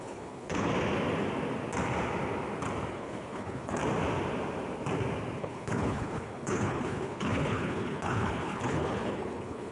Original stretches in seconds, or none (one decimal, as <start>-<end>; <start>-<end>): 0.7-2.9; 3.8-5.4